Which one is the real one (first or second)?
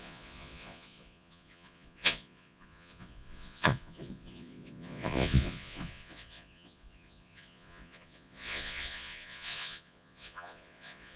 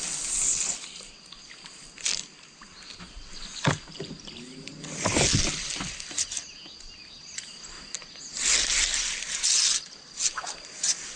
second